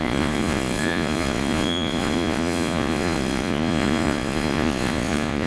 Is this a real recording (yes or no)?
no